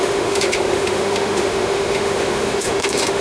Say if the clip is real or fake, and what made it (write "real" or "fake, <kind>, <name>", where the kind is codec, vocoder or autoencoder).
fake, autoencoder, DAC-VAE